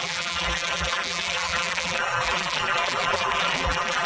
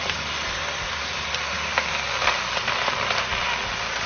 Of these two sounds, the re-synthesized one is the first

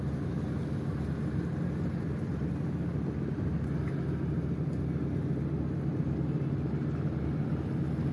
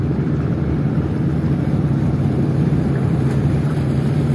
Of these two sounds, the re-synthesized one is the second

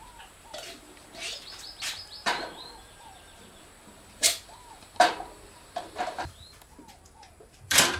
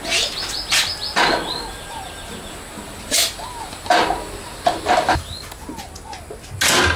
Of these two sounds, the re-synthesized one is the first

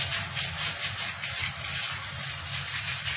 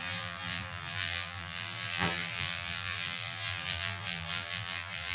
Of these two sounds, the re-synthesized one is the second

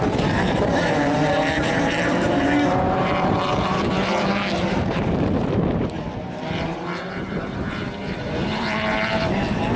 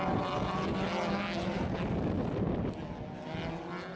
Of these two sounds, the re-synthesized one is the first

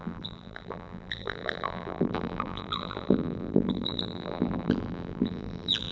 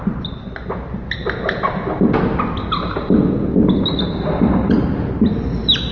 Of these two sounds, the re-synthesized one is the first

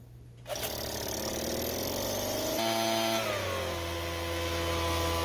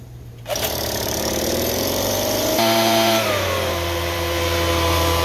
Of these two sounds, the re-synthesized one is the second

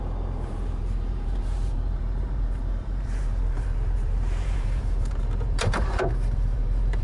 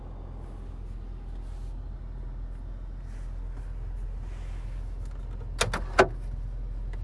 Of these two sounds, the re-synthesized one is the first